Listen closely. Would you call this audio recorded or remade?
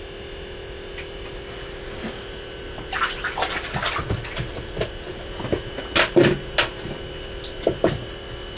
recorded